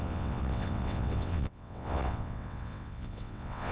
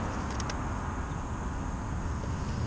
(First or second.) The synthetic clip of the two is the first